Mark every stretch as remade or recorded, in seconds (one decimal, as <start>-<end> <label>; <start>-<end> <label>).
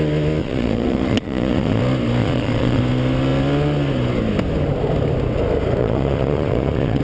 0.0-0.4 recorded; 0.4-1.8 remade; 1.8-2.2 recorded; 2.2-2.8 remade; 2.8-5.8 recorded; 5.8-7.0 remade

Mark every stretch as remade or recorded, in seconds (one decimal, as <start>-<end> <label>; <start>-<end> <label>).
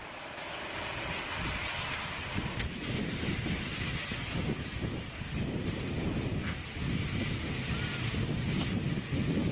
0.0-9.5 recorded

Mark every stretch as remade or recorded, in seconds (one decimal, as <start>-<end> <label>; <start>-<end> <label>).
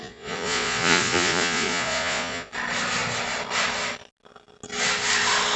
0.0-2.5 remade; 2.5-5.6 recorded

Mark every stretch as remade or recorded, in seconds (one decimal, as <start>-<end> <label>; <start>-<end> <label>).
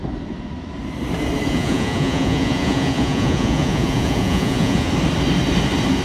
0.0-1.5 recorded; 1.5-4.9 remade; 4.9-6.0 recorded